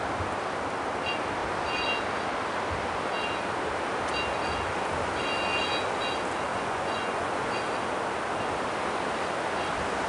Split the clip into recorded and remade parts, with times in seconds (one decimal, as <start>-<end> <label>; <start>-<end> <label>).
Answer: 0.0-6.5 recorded; 6.5-7.5 remade; 7.5-10.1 recorded